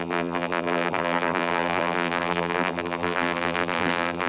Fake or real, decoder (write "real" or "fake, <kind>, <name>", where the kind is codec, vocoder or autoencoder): fake, vocoder, BigVGAN v2